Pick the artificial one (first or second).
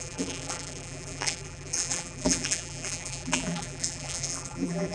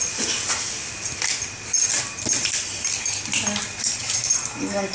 first